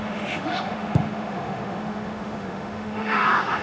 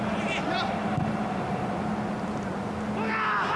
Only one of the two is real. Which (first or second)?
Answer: second